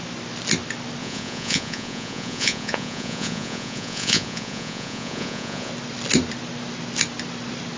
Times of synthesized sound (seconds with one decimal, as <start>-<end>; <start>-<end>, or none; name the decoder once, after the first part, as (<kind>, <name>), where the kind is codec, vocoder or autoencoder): 1.0-5.7 (vocoder, Vocos)